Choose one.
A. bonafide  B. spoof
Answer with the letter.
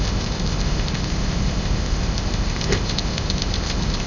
B